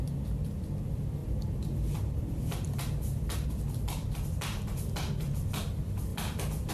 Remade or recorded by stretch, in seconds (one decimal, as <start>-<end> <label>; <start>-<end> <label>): 0.0-6.7 remade